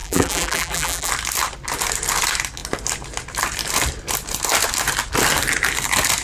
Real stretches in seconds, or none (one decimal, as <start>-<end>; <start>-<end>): 1.1-6.2